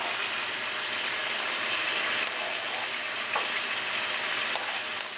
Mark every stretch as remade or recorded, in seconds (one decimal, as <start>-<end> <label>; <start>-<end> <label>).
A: 0.0-5.2 recorded